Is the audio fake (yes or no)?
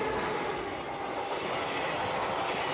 no